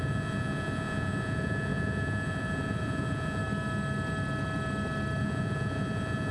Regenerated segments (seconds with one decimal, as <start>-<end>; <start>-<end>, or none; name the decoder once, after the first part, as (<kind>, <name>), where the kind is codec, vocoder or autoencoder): 0.0-3.4 (vocoder, Vocos); 5.2-6.3